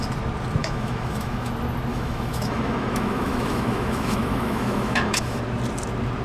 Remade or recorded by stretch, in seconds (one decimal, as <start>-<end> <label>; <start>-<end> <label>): 0.0-0.6 recorded; 0.6-1.5 remade; 1.5-1.9 recorded; 1.9-5.4 remade; 5.4-6.2 recorded